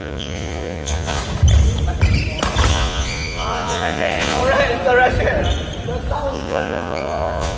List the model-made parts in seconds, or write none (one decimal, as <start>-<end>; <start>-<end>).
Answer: 0.0-1.2; 2.7-4.4; 6.3-7.6